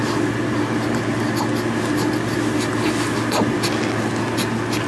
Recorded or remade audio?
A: recorded